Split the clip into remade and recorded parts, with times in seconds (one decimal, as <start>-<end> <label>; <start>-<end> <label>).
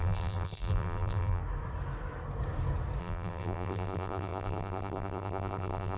0.0-1.4 remade; 1.4-3.0 recorded; 3.0-6.0 remade